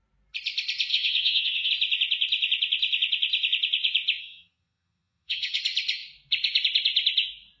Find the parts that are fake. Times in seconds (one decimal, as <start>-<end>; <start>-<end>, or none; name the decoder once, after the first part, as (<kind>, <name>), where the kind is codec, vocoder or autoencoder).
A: 0.9-1.7 (vocoder, HiFi-GAN); 4.2-5.6